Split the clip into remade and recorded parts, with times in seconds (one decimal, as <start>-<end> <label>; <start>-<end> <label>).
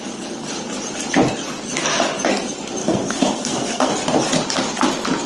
0.0-2.8 recorded; 2.8-3.9 remade; 3.9-5.3 recorded